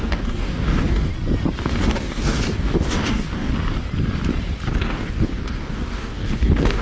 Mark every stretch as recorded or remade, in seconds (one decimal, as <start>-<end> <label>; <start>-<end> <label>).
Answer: 0.0-1.1 remade; 1.1-1.6 recorded; 1.6-3.5 remade; 3.5-4.8 recorded; 4.8-6.8 remade

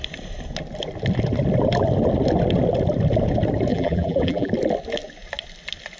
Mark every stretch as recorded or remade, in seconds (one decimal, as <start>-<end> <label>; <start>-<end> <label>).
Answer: 0.0-3.7 recorded; 3.7-4.5 remade; 4.5-6.0 recorded

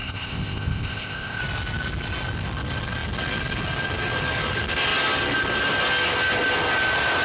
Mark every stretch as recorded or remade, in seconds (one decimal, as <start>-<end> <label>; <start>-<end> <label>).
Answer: 0.0-1.4 remade; 1.4-7.2 recorded

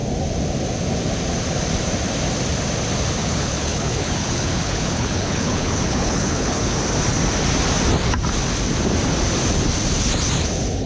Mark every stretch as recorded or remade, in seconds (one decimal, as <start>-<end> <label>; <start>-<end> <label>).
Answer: 0.0-3.2 recorded; 3.2-6.8 remade; 6.8-10.9 recorded

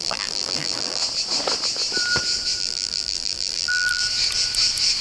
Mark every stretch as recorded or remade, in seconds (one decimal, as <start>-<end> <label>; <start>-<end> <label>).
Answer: 0.0-1.0 remade; 1.0-2.6 recorded; 2.6-4.0 remade; 4.0-5.0 recorded

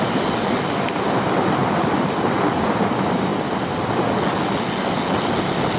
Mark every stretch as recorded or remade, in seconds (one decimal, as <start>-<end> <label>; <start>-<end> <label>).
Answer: 0.0-5.8 recorded

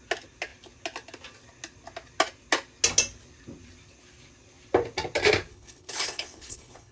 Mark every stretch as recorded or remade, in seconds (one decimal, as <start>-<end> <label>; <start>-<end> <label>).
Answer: 0.0-5.5 recorded; 5.5-6.9 remade

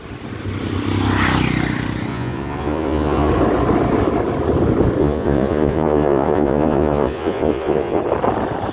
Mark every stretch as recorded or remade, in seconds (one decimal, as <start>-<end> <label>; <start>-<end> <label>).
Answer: 0.0-2.1 recorded; 2.1-3.3 remade; 3.3-5.0 recorded; 5.0-8.0 remade; 8.0-8.7 recorded